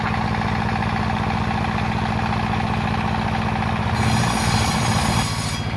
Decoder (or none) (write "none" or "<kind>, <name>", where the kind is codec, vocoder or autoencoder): none